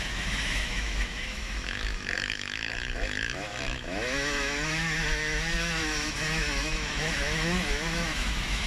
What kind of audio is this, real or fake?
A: fake